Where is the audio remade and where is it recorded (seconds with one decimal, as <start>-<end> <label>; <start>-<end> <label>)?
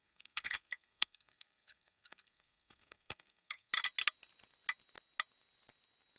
0.0-3.7 remade; 3.7-6.2 recorded